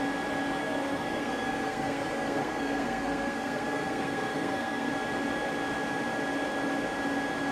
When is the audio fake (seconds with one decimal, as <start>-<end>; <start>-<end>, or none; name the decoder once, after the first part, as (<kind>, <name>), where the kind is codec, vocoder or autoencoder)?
0.6-4.9 (codec, SNAC)